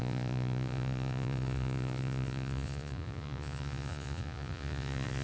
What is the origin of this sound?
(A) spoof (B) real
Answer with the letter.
A